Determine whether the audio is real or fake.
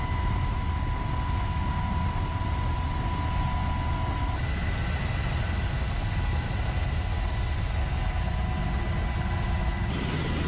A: real